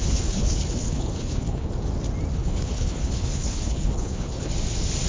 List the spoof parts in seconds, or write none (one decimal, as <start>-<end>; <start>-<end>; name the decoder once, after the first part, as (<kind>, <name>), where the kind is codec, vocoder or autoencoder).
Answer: 0.0-1.7 (codec, HILCodec); 2.3-4.5